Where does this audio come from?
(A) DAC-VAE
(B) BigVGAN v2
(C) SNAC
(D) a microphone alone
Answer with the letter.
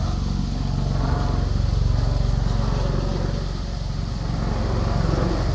D